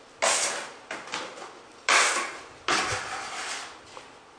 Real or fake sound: real